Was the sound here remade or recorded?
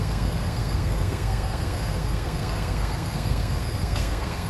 remade